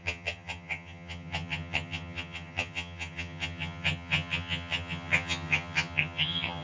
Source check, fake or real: fake